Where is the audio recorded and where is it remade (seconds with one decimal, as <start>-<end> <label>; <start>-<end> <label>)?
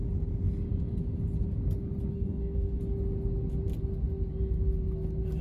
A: 0.0-2.1 recorded; 2.1-2.8 remade; 2.8-5.4 recorded